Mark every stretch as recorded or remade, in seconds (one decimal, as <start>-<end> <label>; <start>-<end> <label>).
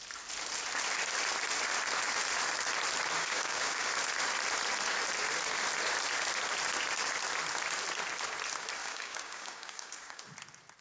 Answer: 0.0-3.2 recorded; 3.2-3.9 remade; 3.9-8.8 recorded; 8.8-10.2 remade; 10.2-10.8 recorded